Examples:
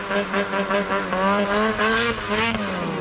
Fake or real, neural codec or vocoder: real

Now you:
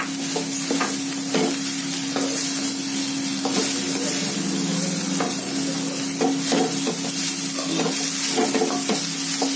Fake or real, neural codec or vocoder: real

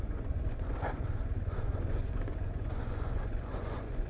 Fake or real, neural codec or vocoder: fake, vocoder, Vocos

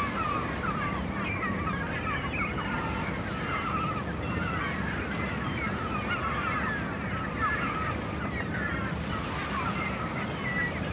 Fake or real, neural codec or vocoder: real